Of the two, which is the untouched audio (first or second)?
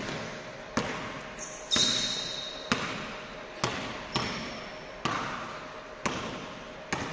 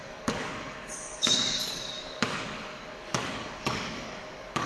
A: first